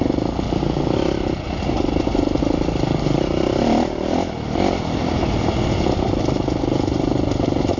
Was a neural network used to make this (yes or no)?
no